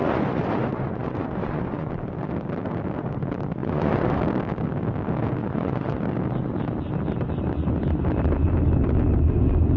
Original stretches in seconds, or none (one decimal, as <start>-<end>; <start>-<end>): 1.9-3.6; 4.2-5.4; 6.0-9.8